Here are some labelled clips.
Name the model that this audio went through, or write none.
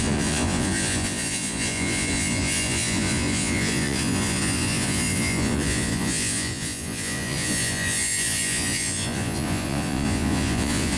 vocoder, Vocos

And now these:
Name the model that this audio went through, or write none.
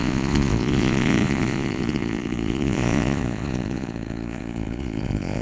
vocoder, Vocos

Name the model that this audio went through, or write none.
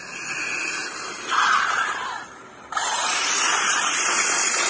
none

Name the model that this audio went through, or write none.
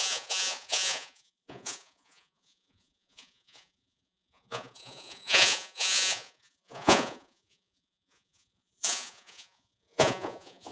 vocoder, Vocos